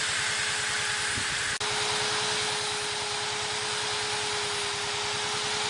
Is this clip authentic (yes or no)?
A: yes